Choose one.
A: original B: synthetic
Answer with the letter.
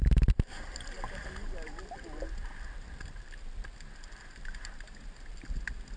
A